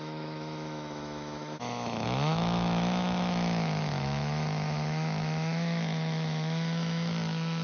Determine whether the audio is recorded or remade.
remade